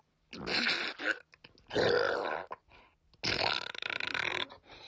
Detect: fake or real real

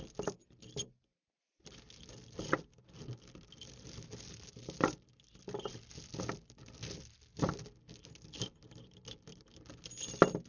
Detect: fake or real real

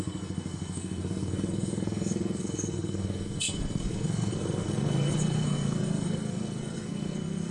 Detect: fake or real fake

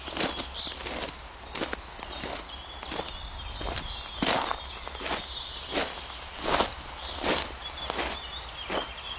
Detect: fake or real real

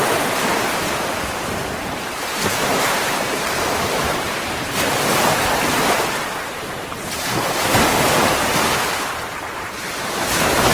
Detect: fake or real fake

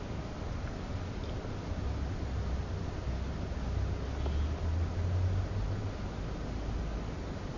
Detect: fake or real real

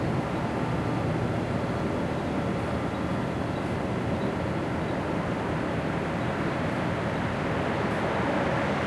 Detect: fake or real real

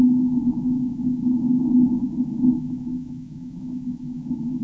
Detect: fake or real fake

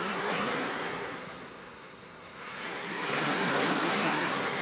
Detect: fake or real fake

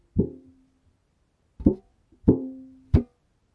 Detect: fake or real real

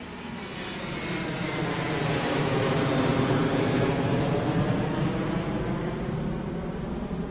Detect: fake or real real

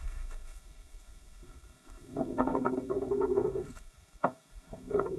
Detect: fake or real fake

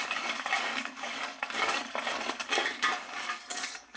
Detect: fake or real fake